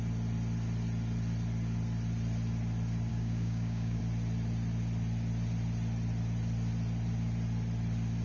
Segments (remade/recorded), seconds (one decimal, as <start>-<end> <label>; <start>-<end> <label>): 0.0-3.1 recorded; 3.1-4.0 remade; 4.0-8.2 recorded